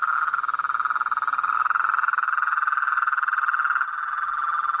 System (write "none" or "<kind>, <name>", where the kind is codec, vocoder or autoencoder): none